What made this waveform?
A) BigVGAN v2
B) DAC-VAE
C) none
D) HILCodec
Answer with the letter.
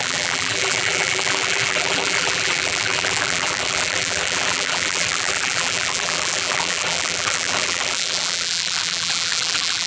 A